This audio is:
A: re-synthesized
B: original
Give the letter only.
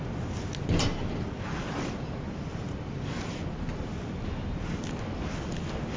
B